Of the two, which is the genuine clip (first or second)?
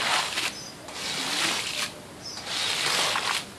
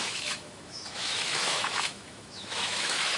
first